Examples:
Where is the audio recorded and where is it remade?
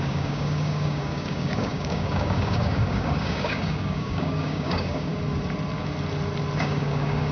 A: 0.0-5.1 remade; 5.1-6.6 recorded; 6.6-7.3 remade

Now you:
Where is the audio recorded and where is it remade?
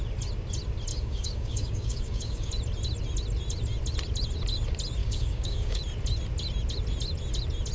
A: 0.0-0.9 recorded; 0.9-2.5 remade; 2.5-5.0 recorded; 5.0-5.8 remade; 5.8-7.7 recorded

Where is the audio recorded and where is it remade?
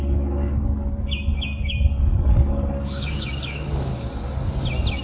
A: 0.0-3.9 remade; 3.9-5.0 recorded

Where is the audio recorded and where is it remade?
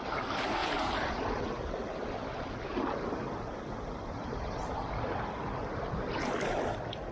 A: 0.0-7.1 recorded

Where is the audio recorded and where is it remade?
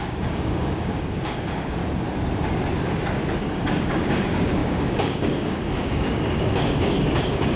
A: 0.0-1.8 remade; 1.8-3.4 recorded; 3.4-7.6 remade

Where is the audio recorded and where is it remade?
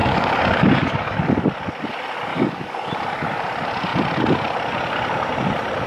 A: 0.0-1.4 remade; 1.4-2.3 recorded; 2.3-2.9 remade; 2.9-5.9 recorded